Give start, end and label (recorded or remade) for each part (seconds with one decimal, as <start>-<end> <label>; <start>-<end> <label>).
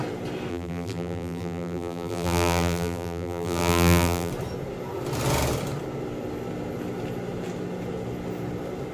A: 0.0-0.5 recorded; 0.5-4.3 remade; 4.3-8.9 recorded